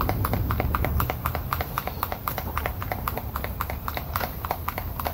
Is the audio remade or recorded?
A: remade